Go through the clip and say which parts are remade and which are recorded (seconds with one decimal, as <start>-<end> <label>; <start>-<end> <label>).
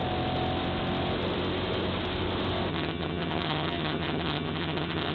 0.0-2.7 recorded; 2.7-5.1 remade